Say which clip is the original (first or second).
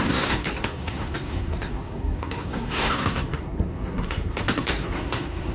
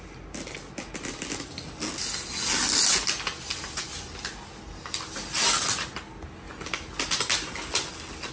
second